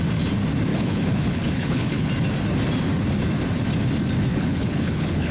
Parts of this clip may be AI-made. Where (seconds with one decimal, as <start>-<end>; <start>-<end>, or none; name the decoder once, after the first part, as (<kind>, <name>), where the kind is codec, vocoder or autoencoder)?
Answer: 0.7-2.1 (codec, HILCodec); 4.3-5.3